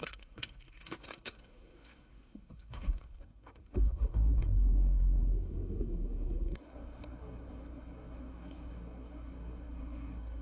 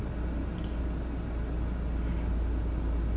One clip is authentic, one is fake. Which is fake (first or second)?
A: first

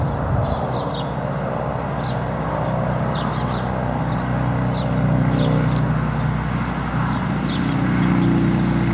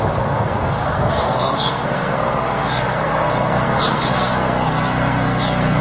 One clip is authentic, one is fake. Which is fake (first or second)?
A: second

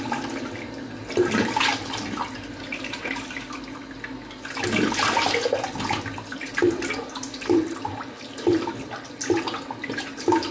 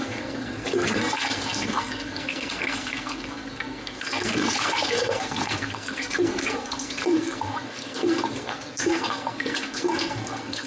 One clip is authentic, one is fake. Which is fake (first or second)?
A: second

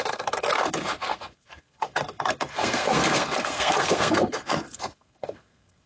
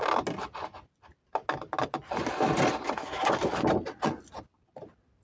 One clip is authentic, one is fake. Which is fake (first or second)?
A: first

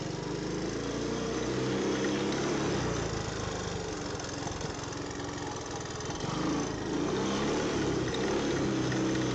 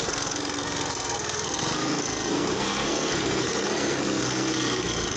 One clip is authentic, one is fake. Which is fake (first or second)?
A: second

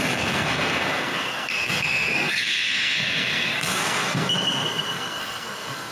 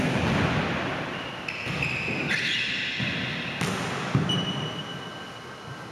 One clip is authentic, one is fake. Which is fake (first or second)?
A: first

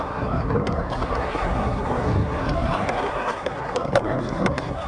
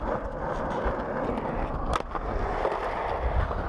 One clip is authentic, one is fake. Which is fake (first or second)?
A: first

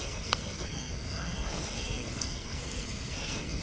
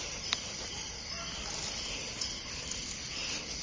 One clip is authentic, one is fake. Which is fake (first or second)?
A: first